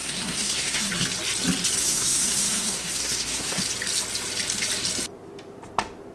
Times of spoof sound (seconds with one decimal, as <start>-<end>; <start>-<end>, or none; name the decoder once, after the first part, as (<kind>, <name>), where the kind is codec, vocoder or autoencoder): 0.0-0.9 (codec, SNAC); 1.8-3.6